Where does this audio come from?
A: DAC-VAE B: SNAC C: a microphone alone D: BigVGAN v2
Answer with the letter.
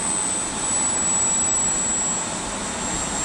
C